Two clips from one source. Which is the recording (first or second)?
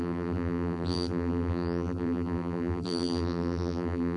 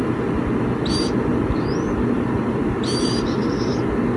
second